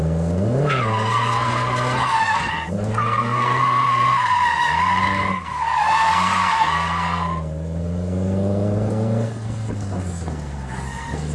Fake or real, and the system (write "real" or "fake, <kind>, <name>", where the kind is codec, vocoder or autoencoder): fake, codec, SNAC